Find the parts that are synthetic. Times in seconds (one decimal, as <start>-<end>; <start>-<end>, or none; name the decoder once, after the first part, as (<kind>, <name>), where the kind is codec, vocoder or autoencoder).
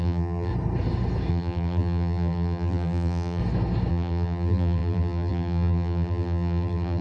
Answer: 0.0-0.5 (vocoder, BigVGAN v2); 1.3-3.4; 3.9-7.0